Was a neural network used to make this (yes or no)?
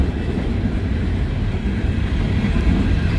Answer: no